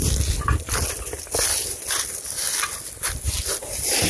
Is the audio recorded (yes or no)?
yes